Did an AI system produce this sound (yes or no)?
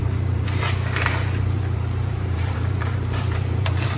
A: yes